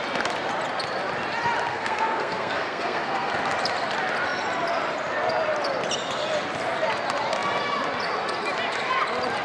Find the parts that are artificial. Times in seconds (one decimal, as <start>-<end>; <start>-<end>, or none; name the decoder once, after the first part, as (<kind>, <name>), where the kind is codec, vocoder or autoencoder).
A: 1.7-3.3 (codec, SNAC)